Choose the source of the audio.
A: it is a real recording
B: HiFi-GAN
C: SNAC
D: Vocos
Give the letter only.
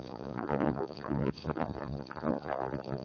D